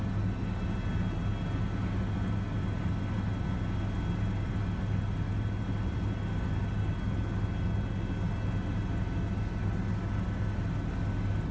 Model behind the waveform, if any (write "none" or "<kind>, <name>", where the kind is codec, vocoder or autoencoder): none